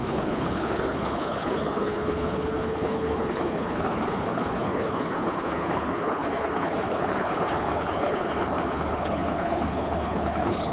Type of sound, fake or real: fake